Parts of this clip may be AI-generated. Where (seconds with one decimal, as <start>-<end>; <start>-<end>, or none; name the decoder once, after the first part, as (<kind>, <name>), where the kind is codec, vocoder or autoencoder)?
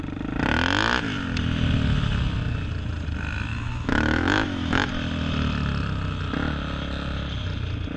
3.5-4.9 (autoencoder, DAC-VAE)